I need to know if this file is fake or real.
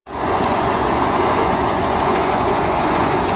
fake